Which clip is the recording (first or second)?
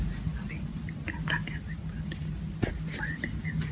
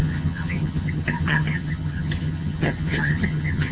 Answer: first